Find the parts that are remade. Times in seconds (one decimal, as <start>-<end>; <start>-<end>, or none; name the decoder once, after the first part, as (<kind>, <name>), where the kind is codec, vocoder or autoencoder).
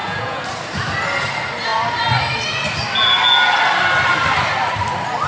0.0-0.5 (vocoder, Vocos)